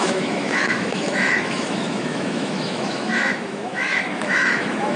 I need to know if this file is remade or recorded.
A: remade